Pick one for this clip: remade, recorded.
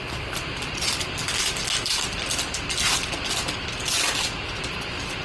recorded